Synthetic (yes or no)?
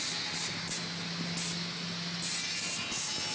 no